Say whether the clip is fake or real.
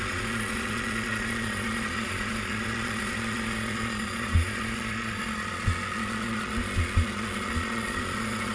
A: fake